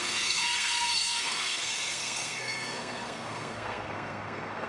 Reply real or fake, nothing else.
fake